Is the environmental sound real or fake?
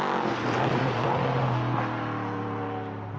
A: real